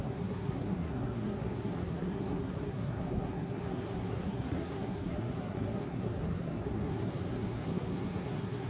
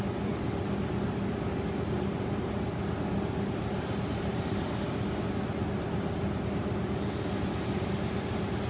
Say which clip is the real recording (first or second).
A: second